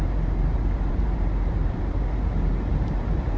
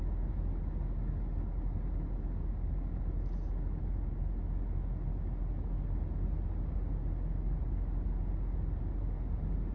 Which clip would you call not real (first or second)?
first